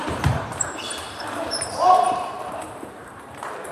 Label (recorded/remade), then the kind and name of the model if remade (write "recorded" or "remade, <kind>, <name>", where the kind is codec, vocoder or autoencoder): remade, vocoder, BigVGAN v2